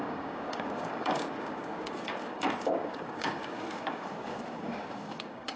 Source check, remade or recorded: remade